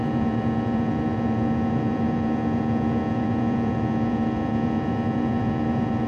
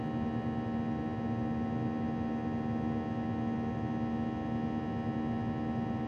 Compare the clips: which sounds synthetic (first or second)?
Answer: first